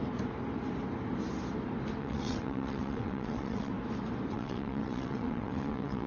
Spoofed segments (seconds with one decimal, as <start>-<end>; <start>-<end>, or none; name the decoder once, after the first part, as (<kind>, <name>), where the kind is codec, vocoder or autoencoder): 2.0-3.7 (vocoder, WaveNeXt); 4.3-6.1